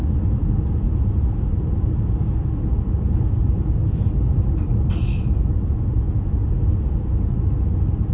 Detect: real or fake real